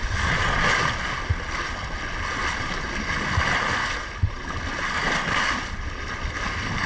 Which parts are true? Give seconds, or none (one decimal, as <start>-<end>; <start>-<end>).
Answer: 0.0-6.9